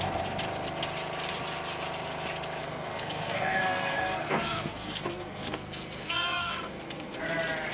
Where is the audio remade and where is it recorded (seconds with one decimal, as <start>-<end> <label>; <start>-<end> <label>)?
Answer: 0.0-2.6 recorded; 2.6-7.2 remade; 7.2-7.7 recorded